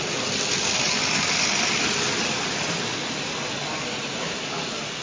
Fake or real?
real